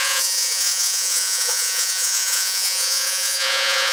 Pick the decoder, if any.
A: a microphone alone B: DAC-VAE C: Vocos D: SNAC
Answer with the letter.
C